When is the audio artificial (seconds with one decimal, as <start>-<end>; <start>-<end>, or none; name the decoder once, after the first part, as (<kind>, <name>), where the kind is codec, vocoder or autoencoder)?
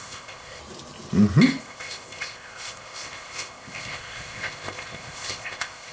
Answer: 0.0-0.6 (codec, ZipCodec); 1.6-5.9